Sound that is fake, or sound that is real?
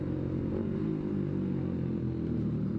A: real